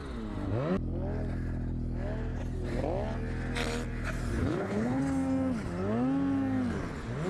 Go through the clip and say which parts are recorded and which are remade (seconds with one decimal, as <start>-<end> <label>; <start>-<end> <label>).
0.0-4.4 recorded; 4.4-5.0 remade; 5.0-7.3 recorded